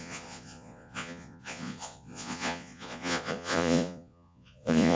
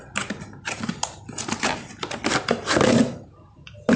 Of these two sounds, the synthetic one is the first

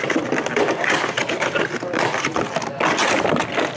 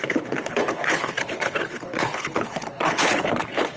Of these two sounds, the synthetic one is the second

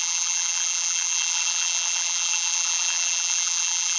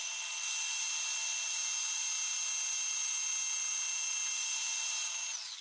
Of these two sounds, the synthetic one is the first